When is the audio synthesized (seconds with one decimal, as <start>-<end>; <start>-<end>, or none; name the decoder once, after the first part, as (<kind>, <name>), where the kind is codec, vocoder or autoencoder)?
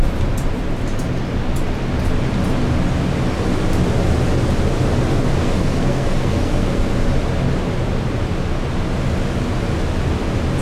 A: 5.4-6.9 (codec, SNAC)